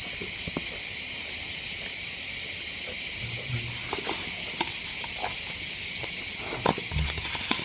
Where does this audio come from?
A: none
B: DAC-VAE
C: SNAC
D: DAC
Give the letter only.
A